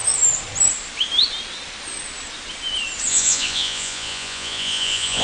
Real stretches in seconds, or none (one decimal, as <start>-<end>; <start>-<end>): 0.0-3.1